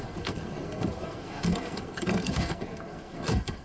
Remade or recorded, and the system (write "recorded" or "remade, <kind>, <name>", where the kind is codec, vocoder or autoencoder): remade, codec, SNAC